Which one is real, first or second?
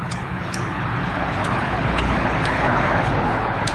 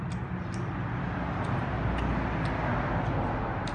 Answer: second